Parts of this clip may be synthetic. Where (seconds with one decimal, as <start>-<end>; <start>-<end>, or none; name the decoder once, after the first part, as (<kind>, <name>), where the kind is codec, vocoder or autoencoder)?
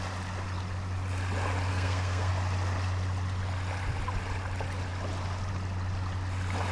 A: 1.7-2.3 (codec, SNAC)